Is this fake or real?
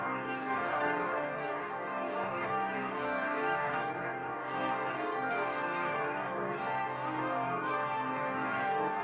fake